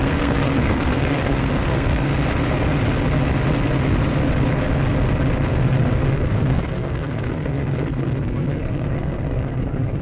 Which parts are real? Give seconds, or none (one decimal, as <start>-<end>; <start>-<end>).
2.1-5.5